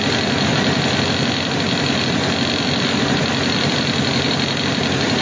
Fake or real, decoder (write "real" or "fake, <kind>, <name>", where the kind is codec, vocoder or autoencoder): real